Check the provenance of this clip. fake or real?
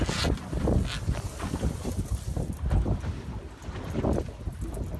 real